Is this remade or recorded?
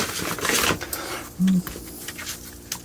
recorded